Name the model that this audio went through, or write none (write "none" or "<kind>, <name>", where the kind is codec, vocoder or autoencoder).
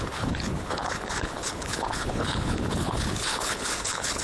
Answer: codec, HILCodec